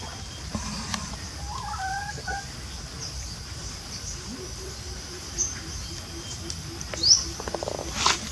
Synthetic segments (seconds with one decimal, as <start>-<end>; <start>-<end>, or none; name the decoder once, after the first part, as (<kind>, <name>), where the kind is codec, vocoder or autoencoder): 3.4-5.9 (vocoder, BigVGAN v2)